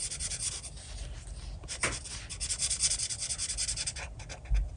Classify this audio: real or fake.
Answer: real